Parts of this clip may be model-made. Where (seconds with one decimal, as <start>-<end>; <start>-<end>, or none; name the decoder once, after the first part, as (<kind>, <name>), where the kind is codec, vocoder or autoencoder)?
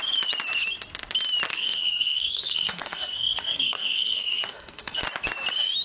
1.5-5.0 (codec, SNAC)